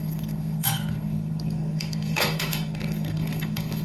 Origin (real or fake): fake